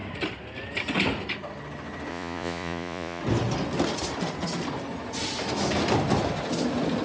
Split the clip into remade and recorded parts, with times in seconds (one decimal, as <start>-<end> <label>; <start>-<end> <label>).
0.0-2.1 recorded; 2.1-3.2 remade; 3.2-7.0 recorded